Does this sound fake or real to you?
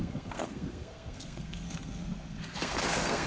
fake